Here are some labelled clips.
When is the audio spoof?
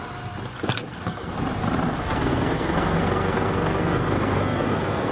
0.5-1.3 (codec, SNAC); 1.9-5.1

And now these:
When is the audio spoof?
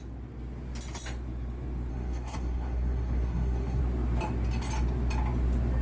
1.9-3.8 (codec, SNAC)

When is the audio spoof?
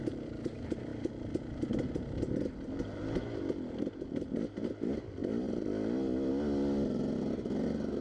5.2-6.3 (vocoder, BigVGAN v2)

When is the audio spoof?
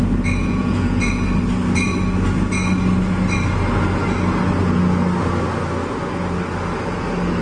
0.4-1.0 (vocoder, Vocos)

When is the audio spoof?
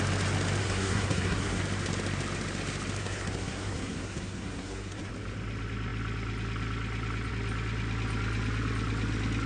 0.6-1.6 (codec, SNAC); 3.0-5.1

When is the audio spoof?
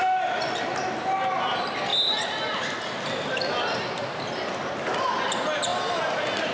none